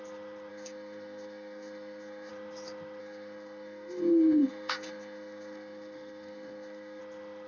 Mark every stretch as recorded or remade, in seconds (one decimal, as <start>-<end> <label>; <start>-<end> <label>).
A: 0.0-0.5 recorded; 0.5-2.3 remade; 2.3-3.0 recorded; 3.0-7.0 remade; 7.0-7.5 recorded